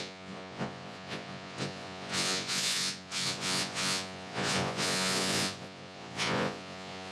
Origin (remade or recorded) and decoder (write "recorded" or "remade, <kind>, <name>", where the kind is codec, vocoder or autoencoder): remade, vocoder, Vocos